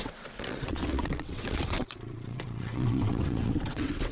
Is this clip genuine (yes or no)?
no